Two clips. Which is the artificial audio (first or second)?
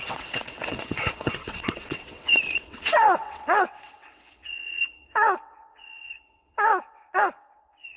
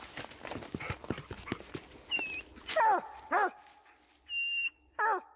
first